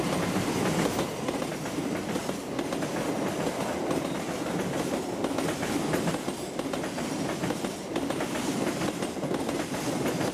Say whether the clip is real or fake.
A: real